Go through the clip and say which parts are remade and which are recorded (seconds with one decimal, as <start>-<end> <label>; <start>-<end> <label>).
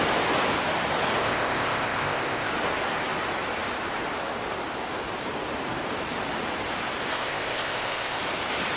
0.0-1.2 recorded; 1.2-2.5 remade; 2.5-7.1 recorded; 7.1-8.2 remade; 8.2-8.8 recorded